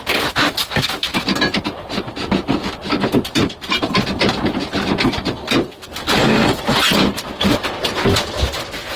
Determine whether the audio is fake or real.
real